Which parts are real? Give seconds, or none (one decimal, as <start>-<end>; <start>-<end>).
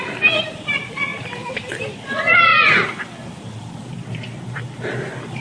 0.0-5.4